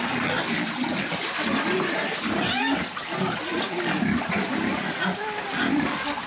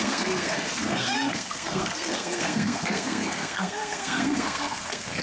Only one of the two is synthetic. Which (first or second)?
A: second